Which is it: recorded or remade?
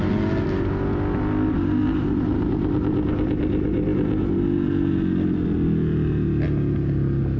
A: recorded